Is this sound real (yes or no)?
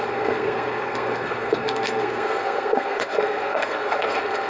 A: no